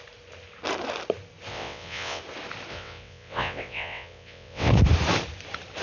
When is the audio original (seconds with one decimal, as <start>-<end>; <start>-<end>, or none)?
0.0-1.5; 2.2-2.7; 4.7-5.8